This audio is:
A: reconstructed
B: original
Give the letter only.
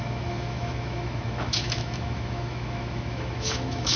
A